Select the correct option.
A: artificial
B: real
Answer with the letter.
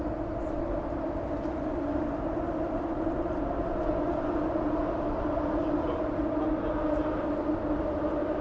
B